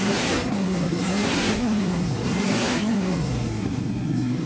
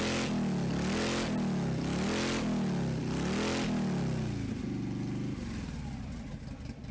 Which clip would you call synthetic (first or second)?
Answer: first